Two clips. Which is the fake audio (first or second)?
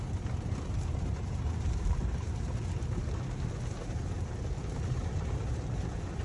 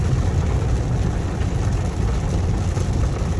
first